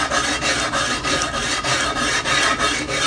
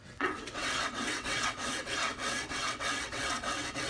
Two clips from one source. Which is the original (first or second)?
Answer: first